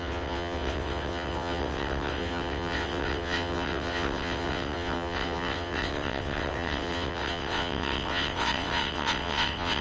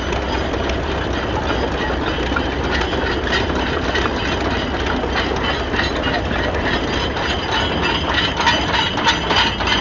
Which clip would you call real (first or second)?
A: second